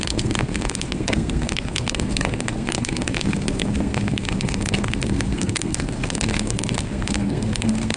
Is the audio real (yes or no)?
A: no